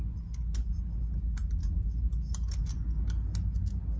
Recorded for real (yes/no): yes